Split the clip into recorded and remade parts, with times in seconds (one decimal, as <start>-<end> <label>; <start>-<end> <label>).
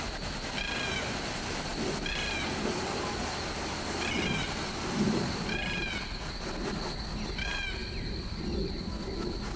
0.0-7.8 recorded; 7.8-9.6 remade